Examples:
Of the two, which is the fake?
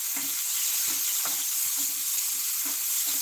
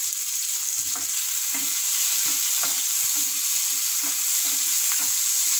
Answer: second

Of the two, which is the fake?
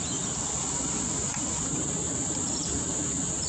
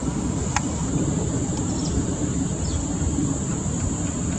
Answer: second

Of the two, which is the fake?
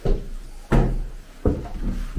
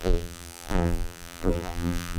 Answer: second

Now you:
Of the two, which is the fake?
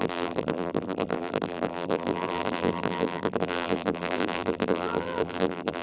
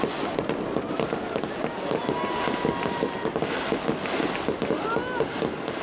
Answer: first